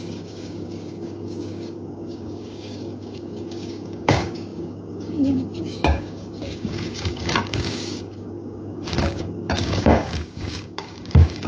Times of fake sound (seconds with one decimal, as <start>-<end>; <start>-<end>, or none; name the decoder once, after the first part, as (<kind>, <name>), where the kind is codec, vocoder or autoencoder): 0.0-11.5 (codec, DAC)